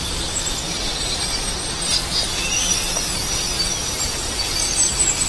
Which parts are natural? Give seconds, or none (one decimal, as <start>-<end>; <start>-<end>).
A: 0.0-5.3